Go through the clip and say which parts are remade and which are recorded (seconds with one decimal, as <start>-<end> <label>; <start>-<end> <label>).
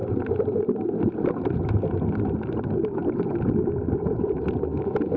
0.0-5.2 recorded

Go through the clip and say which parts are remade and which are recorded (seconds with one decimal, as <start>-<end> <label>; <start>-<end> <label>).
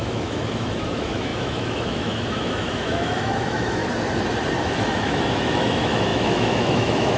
0.0-3.8 remade; 3.8-4.6 recorded; 4.6-7.2 remade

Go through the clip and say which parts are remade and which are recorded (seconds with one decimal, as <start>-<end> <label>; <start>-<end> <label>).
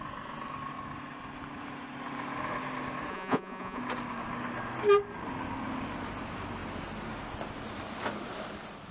0.0-3.1 recorded; 3.1-3.8 remade; 3.8-8.9 recorded